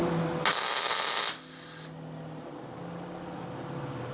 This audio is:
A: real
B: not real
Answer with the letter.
A